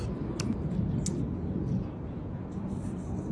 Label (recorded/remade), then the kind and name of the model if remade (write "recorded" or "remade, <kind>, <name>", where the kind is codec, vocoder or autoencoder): recorded